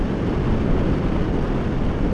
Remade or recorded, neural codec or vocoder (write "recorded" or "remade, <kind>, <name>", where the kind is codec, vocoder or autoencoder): recorded